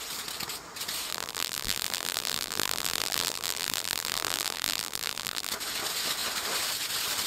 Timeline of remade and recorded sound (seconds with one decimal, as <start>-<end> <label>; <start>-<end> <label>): 0.0-1.1 recorded; 1.1-5.5 remade; 5.5-7.3 recorded

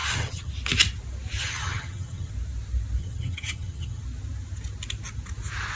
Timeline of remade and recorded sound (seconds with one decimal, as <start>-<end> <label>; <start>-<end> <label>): 0.0-0.5 remade; 0.5-1.4 recorded; 1.4-2.3 remade; 2.3-3.0 recorded; 3.0-4.0 remade; 4.0-5.8 recorded

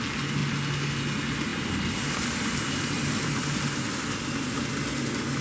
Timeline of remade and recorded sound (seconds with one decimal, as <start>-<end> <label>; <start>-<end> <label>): 0.0-1.5 recorded; 1.5-4.7 remade; 4.7-5.4 recorded